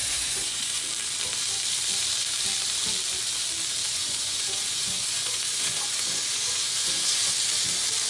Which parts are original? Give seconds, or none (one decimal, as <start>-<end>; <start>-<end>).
0.8-3.8; 7.3-8.1